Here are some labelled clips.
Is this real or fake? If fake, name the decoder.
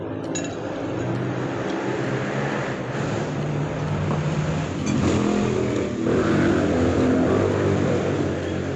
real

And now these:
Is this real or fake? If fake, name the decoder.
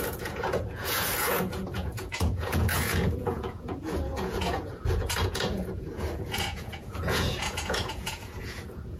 fake, vocoder, Vocos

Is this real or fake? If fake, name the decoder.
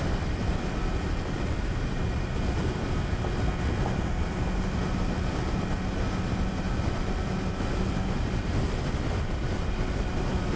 real